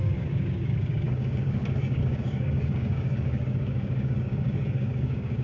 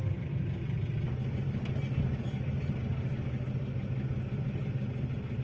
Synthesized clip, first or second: first